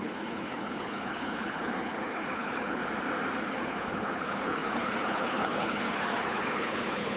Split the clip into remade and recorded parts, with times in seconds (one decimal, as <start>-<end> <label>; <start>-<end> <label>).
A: 0.0-2.8 remade; 2.8-3.4 recorded; 3.4-7.2 remade